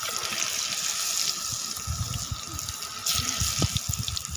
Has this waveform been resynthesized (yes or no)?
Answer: no